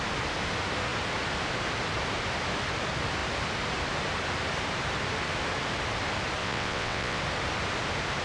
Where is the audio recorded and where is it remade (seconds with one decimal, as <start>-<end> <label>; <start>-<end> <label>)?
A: 0.0-6.4 recorded; 6.4-7.2 remade; 7.2-8.2 recorded